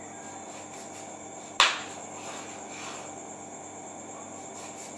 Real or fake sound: real